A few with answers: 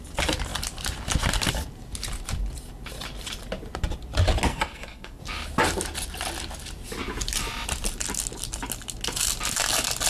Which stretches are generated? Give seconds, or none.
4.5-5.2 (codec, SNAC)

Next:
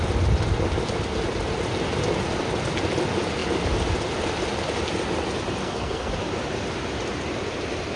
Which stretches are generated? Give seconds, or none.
5.6-6.1 (codec, SNAC)

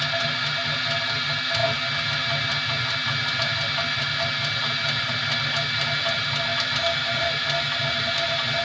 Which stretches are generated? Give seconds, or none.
none

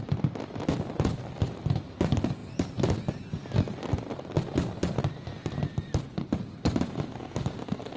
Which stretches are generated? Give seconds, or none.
none